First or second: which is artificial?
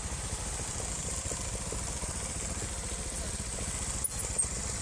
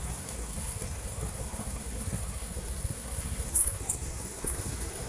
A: second